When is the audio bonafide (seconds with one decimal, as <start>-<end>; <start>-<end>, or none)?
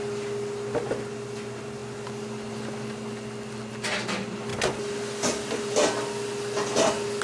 0.0-7.2